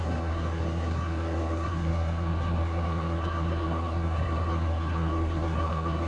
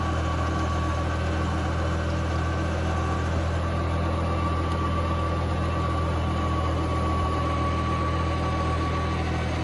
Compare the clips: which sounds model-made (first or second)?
first